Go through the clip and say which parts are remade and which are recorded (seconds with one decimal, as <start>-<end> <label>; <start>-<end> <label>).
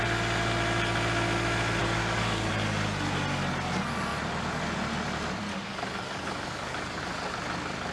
0.0-1.8 recorded; 1.8-2.5 remade; 2.5-5.5 recorded; 5.5-7.0 remade; 7.0-7.9 recorded